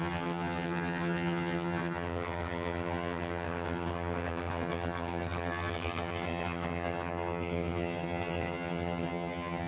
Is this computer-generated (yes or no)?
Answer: yes